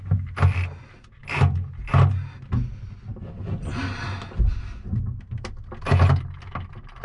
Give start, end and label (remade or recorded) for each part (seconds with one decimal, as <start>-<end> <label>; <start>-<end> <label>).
0.0-7.0 recorded